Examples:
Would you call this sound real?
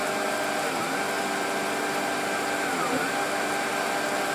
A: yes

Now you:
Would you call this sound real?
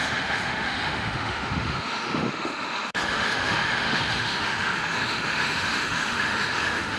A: no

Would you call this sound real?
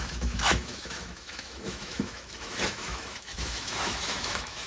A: no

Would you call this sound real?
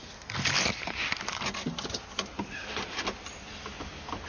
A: yes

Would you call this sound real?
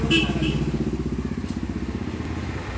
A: yes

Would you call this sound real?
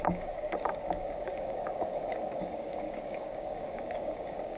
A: no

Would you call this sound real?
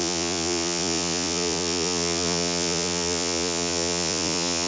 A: no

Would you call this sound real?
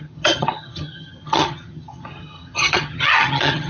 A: no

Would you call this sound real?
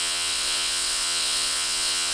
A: no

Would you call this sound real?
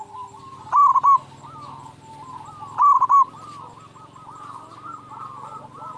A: yes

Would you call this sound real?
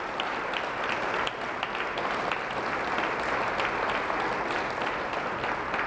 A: yes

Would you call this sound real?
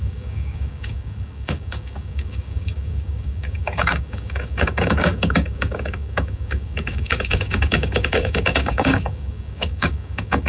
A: no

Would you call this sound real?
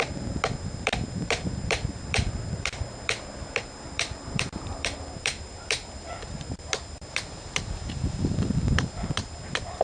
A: no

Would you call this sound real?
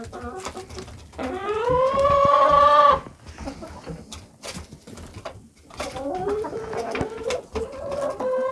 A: yes